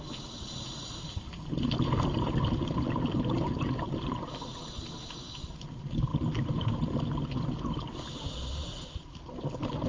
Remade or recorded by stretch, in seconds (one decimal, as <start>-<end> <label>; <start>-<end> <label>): 0.0-9.9 recorded